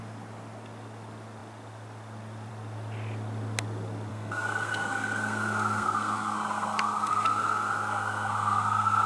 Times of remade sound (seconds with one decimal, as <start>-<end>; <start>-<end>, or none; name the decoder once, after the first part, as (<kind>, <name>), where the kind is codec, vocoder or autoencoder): 4.1-9.1 (codec, SNAC)